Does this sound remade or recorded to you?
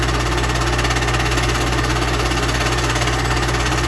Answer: recorded